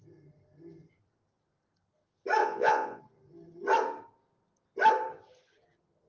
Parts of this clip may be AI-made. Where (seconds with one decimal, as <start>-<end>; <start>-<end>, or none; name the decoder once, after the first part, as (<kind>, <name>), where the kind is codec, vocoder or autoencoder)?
2.4-3.0 (vocoder, Vocos)